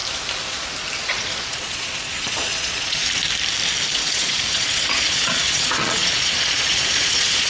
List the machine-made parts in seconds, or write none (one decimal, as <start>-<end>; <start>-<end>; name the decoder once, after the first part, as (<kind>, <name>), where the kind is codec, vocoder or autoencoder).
1.0-3.0 (vocoder, Vocos); 3.9-7.5